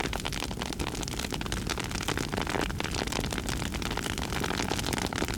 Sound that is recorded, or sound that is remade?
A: recorded